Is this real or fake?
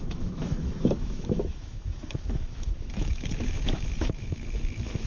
fake